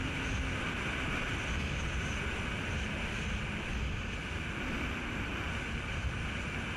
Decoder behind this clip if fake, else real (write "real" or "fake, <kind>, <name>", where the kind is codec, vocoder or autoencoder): real